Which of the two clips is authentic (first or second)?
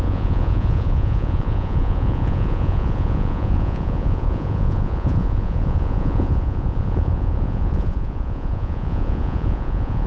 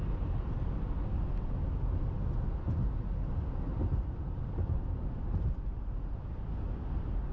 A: second